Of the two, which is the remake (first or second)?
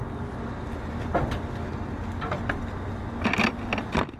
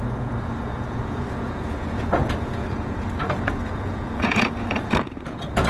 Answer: second